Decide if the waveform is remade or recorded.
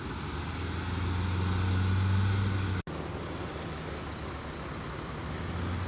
recorded